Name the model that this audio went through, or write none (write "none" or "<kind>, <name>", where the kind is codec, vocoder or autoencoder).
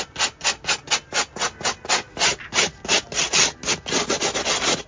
none